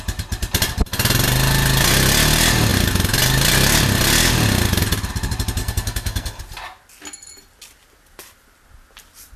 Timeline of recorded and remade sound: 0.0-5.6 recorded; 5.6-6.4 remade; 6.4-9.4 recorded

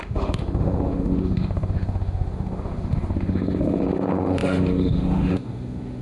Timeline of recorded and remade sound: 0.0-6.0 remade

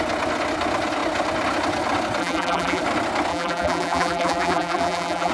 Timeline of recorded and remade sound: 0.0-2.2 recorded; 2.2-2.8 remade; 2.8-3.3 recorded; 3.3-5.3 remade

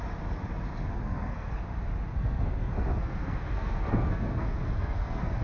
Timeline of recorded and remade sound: 0.0-0.9 recorded; 0.9-1.5 remade; 1.5-2.1 recorded; 2.1-5.4 remade

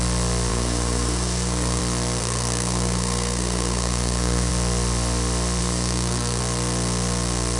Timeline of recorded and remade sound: 0.0-0.5 recorded; 0.5-1.8 remade; 1.8-2.2 recorded; 2.2-4.5 remade; 4.5-5.6 recorded; 5.6-6.4 remade; 6.4-7.6 recorded

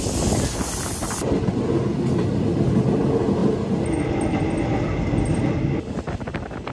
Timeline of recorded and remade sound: 0.0-1.9 recorded; 1.9-2.7 remade; 2.7-6.7 recorded